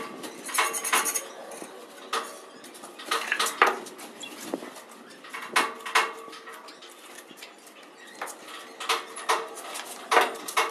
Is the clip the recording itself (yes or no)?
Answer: yes